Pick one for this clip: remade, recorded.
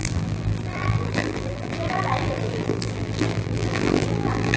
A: remade